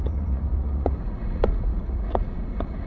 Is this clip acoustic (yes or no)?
no